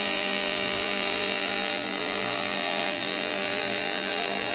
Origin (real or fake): fake